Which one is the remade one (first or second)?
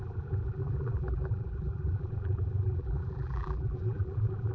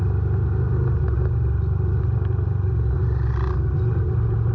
first